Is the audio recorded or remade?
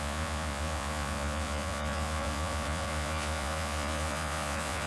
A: remade